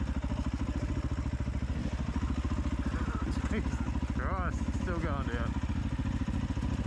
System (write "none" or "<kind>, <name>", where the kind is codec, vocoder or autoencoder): none